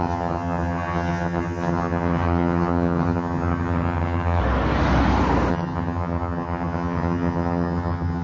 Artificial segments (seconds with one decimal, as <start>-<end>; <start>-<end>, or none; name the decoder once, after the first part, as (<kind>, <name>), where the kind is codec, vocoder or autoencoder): 0.0-4.4 (vocoder, HiFi-GAN); 5.5-8.2